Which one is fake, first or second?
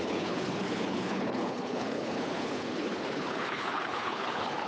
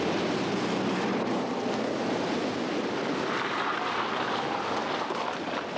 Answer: first